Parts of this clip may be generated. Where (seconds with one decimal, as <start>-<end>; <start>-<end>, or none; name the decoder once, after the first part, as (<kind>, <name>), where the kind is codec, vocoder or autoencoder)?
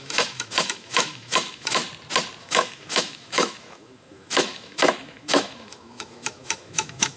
0.0-1.8 (autoencoder, DAC-VAE); 2.4-7.2